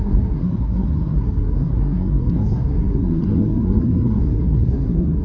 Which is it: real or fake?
fake